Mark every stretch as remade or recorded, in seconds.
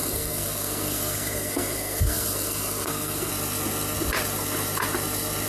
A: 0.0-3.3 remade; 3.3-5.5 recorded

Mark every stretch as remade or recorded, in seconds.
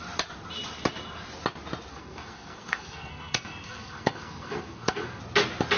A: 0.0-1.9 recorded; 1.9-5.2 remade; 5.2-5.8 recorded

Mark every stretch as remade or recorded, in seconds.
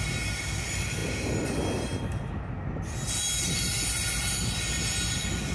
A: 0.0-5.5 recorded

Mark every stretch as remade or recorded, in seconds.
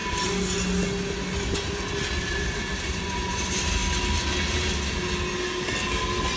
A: 0.0-2.3 recorded; 2.3-3.8 remade; 3.8-6.4 recorded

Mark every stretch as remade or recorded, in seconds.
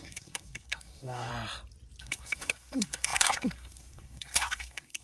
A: 0.0-1.3 remade; 1.3-2.0 recorded; 2.0-5.0 remade